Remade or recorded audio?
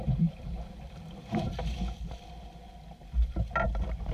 recorded